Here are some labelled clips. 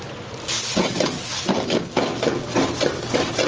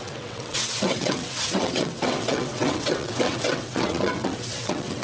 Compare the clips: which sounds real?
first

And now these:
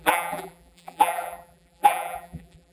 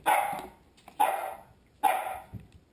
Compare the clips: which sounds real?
second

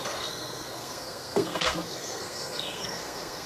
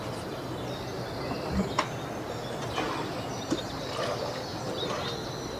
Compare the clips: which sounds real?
second